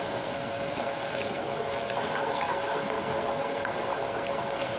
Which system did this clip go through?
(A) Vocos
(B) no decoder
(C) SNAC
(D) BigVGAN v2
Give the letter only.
C